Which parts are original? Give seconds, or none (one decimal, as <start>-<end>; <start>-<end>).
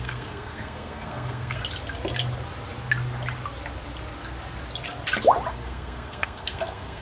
1.6-5.5